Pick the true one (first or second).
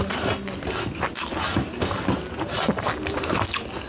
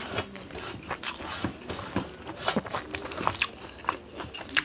first